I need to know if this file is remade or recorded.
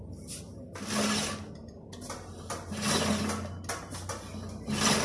recorded